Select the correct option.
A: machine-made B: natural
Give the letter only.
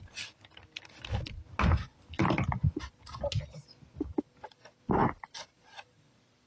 B